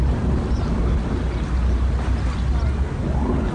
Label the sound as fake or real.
real